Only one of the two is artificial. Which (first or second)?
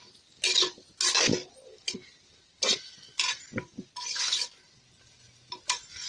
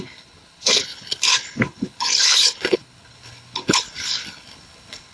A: second